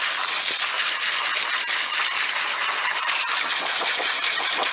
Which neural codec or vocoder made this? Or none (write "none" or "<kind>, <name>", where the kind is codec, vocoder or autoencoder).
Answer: none